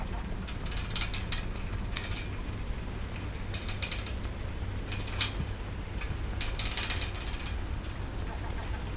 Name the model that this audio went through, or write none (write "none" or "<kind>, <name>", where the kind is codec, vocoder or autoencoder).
none